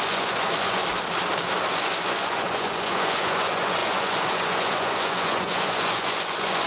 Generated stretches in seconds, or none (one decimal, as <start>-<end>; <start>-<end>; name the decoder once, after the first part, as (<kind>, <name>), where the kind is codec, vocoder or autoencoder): 0.0-0.8 (vocoder, Vocos); 1.7-6.7